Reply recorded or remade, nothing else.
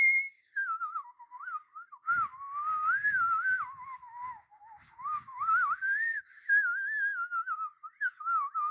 recorded